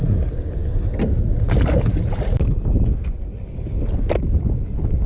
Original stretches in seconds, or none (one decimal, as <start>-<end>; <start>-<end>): 0.0-5.1